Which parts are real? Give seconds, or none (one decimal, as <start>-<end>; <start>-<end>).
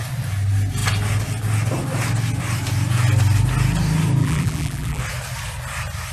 0.0-4.2; 5.0-6.1